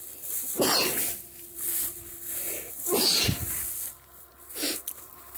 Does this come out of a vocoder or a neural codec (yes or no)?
no